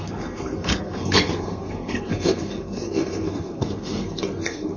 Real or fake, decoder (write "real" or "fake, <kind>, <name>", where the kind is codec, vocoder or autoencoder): fake, codec, SNAC